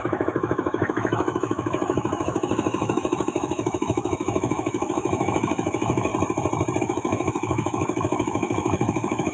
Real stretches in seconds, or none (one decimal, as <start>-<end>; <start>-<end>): 6.1-6.8